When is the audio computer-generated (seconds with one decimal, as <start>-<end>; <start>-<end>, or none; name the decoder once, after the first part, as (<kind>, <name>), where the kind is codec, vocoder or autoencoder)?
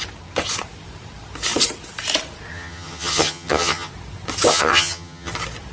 2.5-3.9 (vocoder, HiFi-GAN); 4.5-5.3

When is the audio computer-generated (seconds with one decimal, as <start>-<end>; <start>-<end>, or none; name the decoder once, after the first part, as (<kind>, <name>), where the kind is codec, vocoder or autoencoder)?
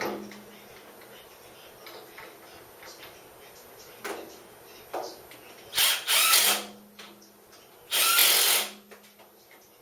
none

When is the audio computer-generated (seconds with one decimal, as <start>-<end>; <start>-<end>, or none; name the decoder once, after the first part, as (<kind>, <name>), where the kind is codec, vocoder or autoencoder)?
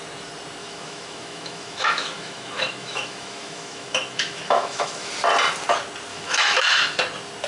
0.6-5.1 (autoencoder, DAC-VAE); 6.1-7.0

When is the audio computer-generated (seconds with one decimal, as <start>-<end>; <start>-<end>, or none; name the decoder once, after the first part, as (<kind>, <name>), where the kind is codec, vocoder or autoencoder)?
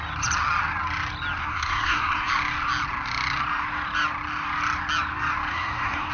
1.4-2.3 (codec, SNAC); 5.5-6.1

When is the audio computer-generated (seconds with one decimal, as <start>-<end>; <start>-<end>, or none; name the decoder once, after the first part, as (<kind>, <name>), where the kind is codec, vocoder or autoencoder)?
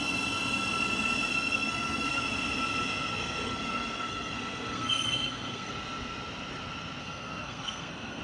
1.3-2.2 (codec, SNAC); 3.1-5.7; 7.0-8.2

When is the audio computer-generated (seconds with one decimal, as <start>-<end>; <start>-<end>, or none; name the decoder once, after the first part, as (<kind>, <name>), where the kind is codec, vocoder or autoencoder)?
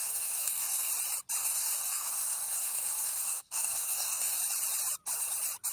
0.0-0.9 (codec, DAC); 1.4-4.4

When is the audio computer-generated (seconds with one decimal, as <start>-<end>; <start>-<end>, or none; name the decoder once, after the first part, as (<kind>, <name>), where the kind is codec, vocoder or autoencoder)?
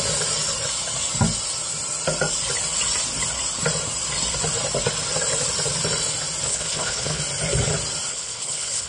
6.5-7.2 (codec, HILCodec); 8.1-8.9